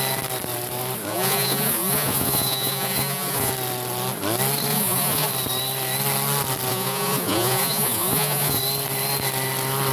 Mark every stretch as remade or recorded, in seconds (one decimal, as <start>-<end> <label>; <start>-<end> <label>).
0.0-1.1 recorded; 1.1-3.5 remade; 3.5-4.7 recorded; 4.7-5.3 remade; 5.3-6.7 recorded; 6.7-8.6 remade; 8.6-9.9 recorded